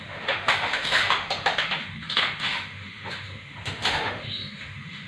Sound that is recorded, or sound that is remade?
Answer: remade